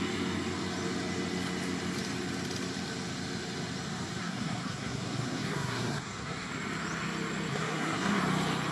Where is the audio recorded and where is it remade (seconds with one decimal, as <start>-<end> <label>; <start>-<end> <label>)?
0.0-4.2 recorded; 4.2-6.5 remade; 6.5-7.5 recorded; 7.5-8.2 remade; 8.2-8.7 recorded